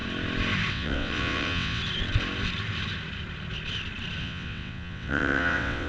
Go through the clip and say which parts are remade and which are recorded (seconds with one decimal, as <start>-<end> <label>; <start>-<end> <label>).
0.0-0.7 recorded; 0.7-1.8 remade; 1.8-4.2 recorded; 4.2-5.9 remade